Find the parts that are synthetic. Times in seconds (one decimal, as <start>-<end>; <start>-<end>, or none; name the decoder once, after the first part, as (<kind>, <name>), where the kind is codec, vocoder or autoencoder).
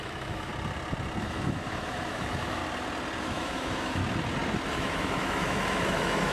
0.0-0.5 (autoencoder, DAC-VAE); 1.2-2.6; 3.2-4.0; 4.7-6.3